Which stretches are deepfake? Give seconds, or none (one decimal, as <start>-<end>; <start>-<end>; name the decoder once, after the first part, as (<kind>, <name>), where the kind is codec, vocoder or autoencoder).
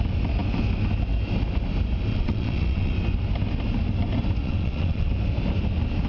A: 2.1-2.9 (vocoder, WaveNeXt); 4.4-5.1